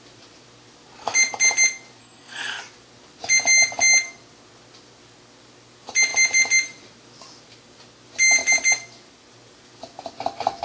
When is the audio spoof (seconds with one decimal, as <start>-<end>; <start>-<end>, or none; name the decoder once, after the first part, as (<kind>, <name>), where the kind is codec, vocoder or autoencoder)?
2.0-2.6 (codec, SNAC)